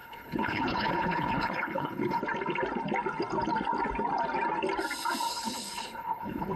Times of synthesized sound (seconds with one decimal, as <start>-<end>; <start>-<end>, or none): 0.0-2.2; 5.3-6.6